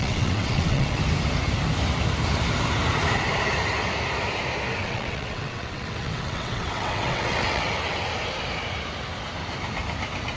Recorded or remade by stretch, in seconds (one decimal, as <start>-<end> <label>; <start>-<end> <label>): 0.0-1.0 remade; 1.0-4.8 recorded; 4.8-8.1 remade; 8.1-10.4 recorded